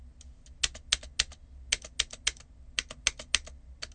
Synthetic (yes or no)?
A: no